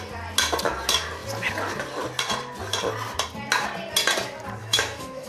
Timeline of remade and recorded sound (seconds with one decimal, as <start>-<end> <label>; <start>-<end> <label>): 0.0-4.6 recorded; 4.6-5.3 remade